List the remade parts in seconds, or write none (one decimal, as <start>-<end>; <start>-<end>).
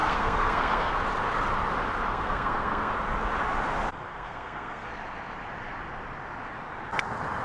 0.0-1.0; 2.1-2.9; 4.1-4.9